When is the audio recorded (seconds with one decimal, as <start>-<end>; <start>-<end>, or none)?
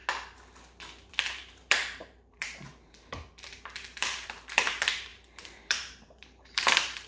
0.0-1.1